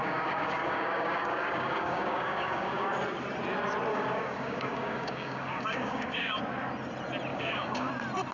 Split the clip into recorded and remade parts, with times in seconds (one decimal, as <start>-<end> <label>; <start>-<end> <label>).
0.0-2.9 remade; 2.9-3.9 recorded; 3.9-6.4 remade; 6.4-7.3 recorded; 7.3-7.9 remade; 7.9-8.3 recorded